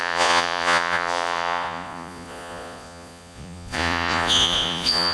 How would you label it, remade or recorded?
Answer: remade